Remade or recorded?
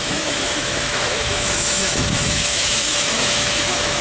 remade